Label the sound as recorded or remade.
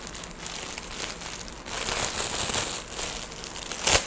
recorded